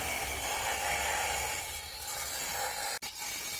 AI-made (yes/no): no